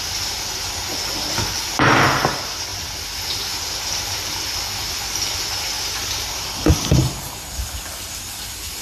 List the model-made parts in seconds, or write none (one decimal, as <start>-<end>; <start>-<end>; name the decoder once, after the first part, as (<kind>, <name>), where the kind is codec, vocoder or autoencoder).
none